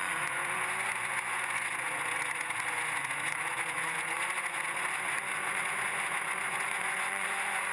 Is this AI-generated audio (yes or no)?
yes